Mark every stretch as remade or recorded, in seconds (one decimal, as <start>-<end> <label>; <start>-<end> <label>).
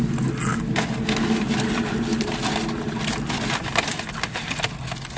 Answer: 0.0-5.2 recorded